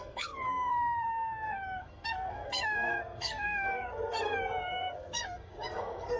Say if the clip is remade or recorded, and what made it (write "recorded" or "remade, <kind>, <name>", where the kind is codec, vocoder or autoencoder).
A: remade, codec, SNAC